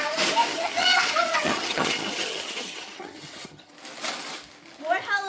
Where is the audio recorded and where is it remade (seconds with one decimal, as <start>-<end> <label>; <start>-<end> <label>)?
0.0-0.5 recorded; 0.5-3.7 remade; 3.7-5.3 recorded